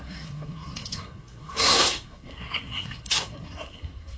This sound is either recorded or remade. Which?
remade